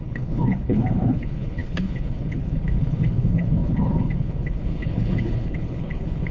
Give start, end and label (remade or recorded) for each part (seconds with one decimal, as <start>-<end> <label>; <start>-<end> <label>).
0.0-6.3 remade